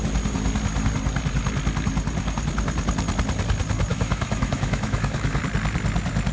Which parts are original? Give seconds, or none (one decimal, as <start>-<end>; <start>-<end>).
0.0-3.9; 5.4-6.3